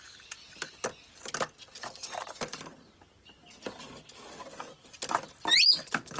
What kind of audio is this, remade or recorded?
recorded